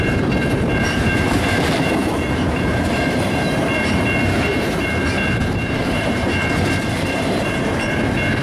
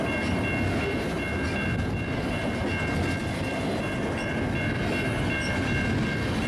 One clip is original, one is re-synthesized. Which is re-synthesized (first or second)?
first